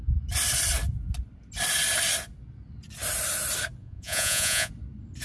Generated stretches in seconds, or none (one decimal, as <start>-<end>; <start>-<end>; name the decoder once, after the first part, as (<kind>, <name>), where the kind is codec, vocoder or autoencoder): 3.8-4.7 (vocoder, Vocos)